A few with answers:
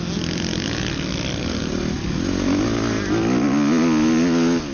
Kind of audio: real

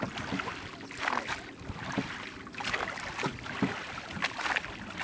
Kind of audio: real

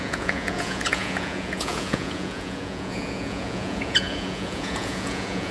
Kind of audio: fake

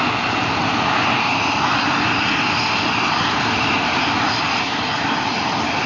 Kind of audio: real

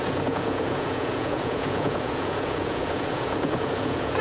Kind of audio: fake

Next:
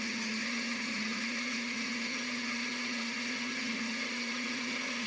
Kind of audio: fake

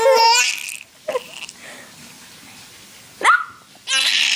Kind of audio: real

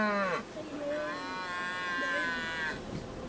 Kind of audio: real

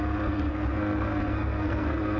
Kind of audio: fake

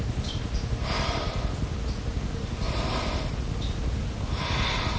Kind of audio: real